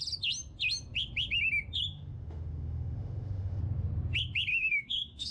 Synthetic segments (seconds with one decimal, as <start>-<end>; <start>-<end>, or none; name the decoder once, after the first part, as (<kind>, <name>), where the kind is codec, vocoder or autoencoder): 1.9-3.6 (autoencoder, DAC-VAE); 4.5-5.3